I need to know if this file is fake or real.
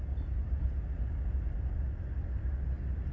real